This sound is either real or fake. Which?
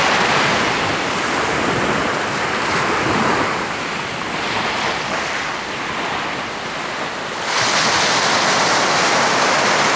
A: real